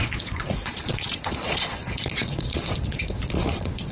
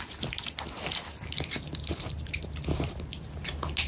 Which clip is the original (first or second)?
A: second